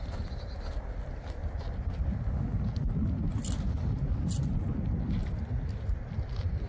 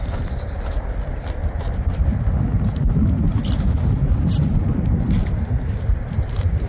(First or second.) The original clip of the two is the first